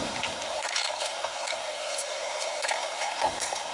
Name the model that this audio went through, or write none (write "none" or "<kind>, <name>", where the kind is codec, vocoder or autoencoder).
codec, SNAC